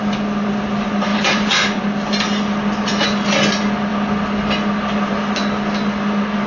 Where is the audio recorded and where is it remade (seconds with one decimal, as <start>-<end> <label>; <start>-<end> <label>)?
0.0-1.1 recorded; 1.1-1.8 remade; 1.8-6.5 recorded